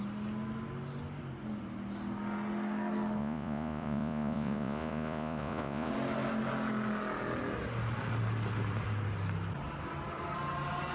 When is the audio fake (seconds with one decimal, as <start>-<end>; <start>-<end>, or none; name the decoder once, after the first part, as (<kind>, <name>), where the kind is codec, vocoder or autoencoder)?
3.2-5.9 (vocoder, Vocos)